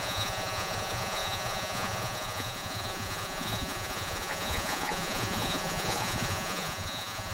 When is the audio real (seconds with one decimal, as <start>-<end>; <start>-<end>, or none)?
none